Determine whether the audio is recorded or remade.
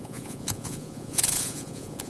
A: remade